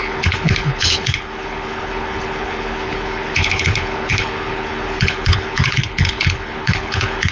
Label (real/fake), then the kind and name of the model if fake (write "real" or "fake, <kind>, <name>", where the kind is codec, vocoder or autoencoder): fake, codec, HILCodec